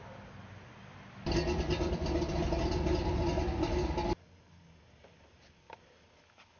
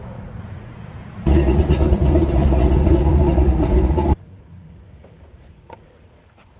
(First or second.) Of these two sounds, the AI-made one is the second